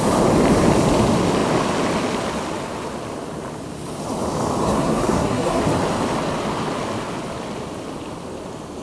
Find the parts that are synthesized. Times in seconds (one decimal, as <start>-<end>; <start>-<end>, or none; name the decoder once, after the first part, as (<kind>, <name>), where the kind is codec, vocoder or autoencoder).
4.6-5.6 (codec, SNAC)